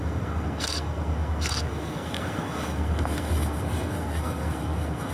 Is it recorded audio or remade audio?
remade